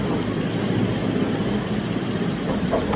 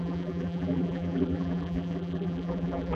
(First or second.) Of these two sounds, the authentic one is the first